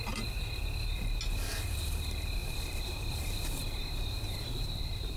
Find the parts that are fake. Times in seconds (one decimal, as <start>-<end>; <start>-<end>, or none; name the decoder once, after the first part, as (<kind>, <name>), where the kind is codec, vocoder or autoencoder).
2.4-5.2 (vocoder, BigVGAN v2)